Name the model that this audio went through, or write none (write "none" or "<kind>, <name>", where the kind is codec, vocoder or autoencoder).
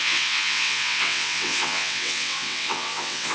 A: vocoder, WaveNeXt